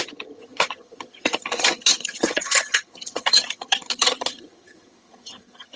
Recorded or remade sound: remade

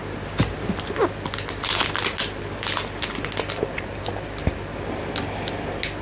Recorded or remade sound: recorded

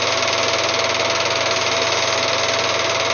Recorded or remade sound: recorded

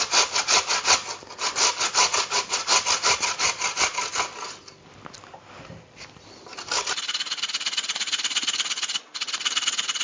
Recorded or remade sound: recorded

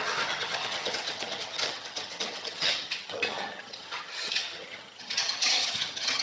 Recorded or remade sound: remade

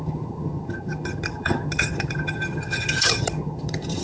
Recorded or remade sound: remade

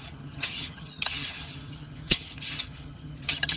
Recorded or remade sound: remade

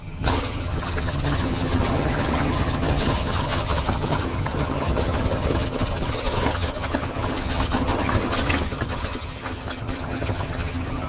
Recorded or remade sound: remade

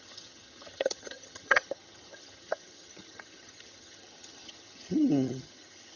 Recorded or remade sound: remade